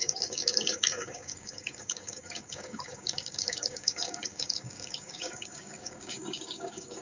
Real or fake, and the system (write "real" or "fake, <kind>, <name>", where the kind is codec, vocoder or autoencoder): fake, codec, DAC